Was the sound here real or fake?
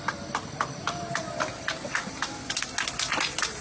real